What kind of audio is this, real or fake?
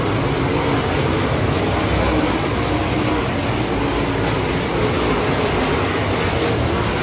real